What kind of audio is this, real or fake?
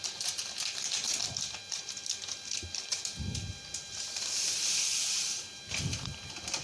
real